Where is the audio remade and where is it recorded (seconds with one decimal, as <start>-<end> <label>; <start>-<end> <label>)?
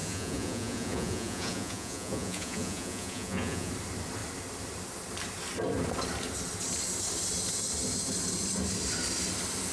0.0-3.7 remade; 3.7-9.7 recorded